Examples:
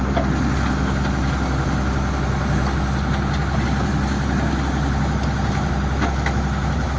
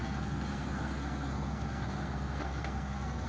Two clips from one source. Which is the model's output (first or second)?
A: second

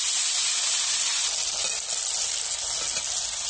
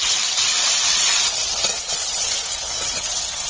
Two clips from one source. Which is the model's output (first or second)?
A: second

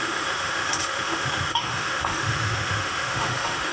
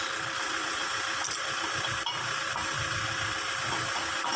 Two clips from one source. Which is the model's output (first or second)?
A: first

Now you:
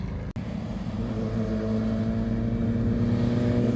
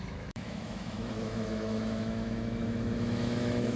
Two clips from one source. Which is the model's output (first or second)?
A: second